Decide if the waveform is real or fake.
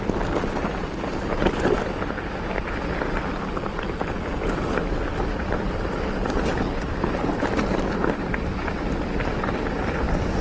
real